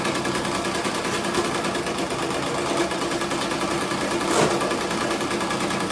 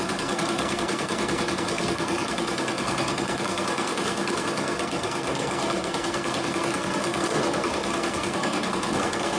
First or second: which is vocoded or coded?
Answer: second